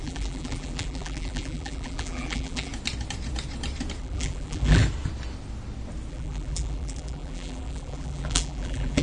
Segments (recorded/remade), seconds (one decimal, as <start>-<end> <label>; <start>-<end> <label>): 0.0-2.7 remade; 2.7-4.0 recorded; 4.0-4.8 remade; 4.8-6.1 recorded; 6.1-9.0 remade